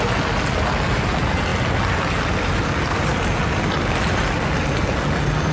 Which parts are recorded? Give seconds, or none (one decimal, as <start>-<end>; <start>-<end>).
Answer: 0.0-5.5